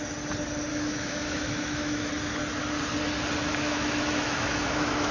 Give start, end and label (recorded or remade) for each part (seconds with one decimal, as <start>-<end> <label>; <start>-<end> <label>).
0.0-0.7 recorded; 0.7-2.1 remade; 2.1-3.4 recorded; 3.4-5.1 remade